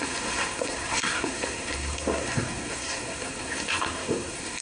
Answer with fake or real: fake